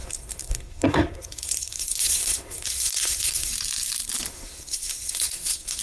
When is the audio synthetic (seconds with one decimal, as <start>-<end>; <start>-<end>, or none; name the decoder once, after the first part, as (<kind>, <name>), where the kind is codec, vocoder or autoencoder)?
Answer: 0.0-3.5 (codec, SNAC); 4.3-5.8